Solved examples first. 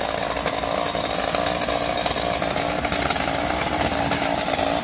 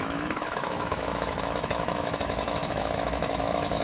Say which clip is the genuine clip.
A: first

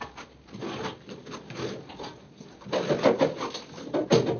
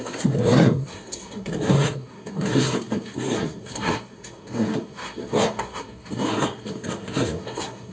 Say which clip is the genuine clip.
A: first